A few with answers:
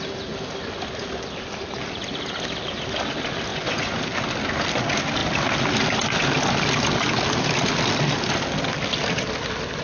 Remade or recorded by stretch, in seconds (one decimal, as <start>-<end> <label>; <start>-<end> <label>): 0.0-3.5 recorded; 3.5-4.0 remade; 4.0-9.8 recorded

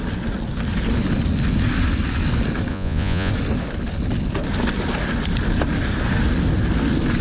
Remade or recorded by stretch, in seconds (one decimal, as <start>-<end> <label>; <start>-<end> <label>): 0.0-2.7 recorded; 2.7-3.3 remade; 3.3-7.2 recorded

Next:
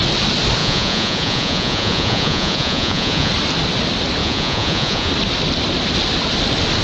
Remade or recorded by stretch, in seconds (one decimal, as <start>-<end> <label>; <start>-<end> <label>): 0.0-0.6 recorded; 0.6-3.3 remade; 3.3-4.2 recorded; 4.2-5.1 remade; 5.1-6.8 recorded

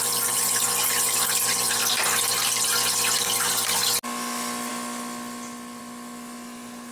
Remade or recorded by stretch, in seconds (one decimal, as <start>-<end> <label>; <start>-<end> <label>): 0.0-6.9 recorded

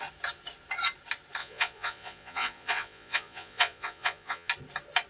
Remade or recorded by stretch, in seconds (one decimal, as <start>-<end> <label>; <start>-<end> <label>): 0.0-1.4 recorded; 1.4-4.5 remade; 4.5-5.1 recorded

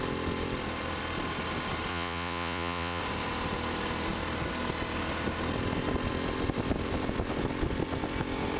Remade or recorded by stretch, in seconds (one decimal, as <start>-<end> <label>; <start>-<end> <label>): 0.0-1.9 recorded; 1.9-3.0 remade; 3.0-8.6 recorded